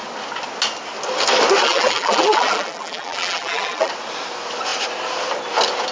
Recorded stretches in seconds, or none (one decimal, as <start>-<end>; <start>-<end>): 0.0-1.6; 3.9-5.9